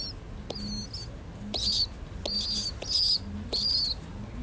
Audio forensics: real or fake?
real